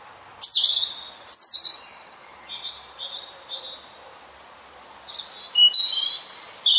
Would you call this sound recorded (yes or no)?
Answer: yes